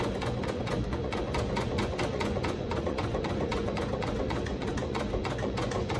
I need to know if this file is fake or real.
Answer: fake